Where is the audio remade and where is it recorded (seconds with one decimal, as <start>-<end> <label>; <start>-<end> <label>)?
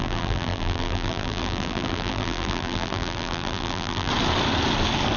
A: 0.0-4.1 remade; 4.1-5.2 recorded